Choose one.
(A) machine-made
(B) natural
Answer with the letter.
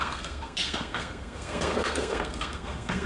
A